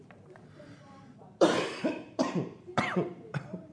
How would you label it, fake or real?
fake